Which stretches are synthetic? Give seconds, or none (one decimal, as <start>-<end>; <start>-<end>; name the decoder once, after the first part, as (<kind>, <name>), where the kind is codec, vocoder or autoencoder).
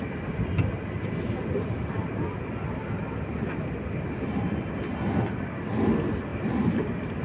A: none